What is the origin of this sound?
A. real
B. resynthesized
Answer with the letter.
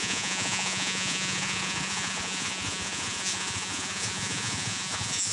B